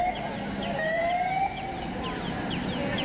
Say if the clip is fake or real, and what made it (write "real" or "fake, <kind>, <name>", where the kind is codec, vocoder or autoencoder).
fake, vocoder, BigVGAN v2